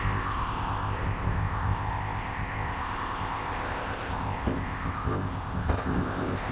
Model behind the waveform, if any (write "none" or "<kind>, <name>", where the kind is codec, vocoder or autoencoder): codec, ZipCodec